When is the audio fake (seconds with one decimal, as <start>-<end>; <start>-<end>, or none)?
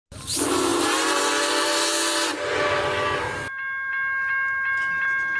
none